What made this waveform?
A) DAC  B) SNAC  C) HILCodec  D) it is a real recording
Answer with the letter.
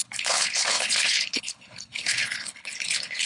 C